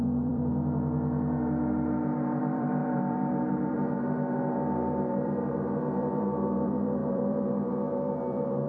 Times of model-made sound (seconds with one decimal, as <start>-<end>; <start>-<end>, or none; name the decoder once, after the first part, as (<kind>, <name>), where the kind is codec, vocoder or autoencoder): 0.0-0.5 (vocoder, BigVGAN v2); 2.4-8.7